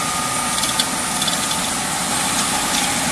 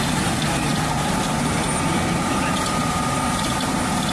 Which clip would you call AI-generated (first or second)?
second